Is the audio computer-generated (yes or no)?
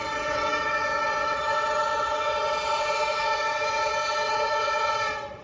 yes